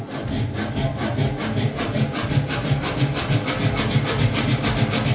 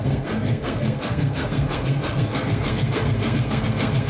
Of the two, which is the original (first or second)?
first